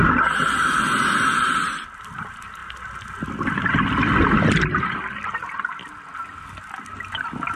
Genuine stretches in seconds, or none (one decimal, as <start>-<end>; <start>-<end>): 0.0-7.6